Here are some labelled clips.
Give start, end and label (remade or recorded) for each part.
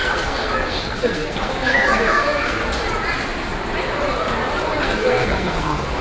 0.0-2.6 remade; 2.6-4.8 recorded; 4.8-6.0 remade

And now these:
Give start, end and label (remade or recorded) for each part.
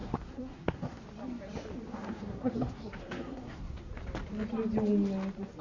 0.0-1.0 remade; 1.0-1.9 recorded; 1.9-3.9 remade; 3.9-5.6 recorded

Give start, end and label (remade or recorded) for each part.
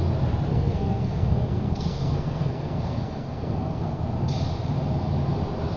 0.0-0.5 recorded; 0.5-4.0 remade; 4.0-5.8 recorded